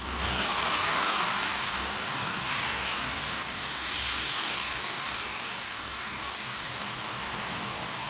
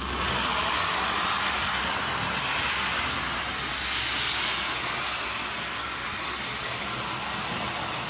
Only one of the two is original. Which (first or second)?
second